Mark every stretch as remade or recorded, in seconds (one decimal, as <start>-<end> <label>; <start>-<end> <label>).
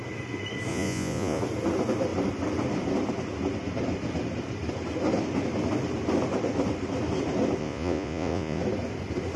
0.0-0.7 recorded; 0.7-1.4 remade; 1.4-7.6 recorded; 7.6-8.6 remade; 8.6-9.4 recorded